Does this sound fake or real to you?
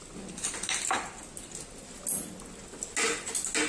real